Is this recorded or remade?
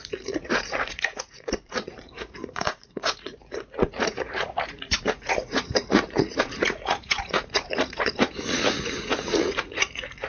remade